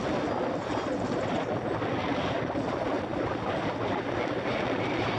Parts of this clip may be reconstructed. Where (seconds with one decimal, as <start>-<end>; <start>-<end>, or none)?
none